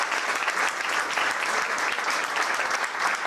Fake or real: real